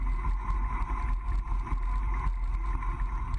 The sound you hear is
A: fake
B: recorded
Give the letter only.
B